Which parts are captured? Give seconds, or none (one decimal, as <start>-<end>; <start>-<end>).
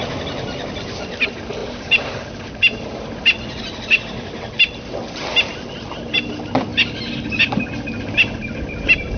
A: 0.0-9.2